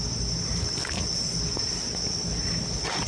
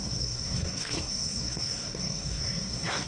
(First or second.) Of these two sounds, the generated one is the second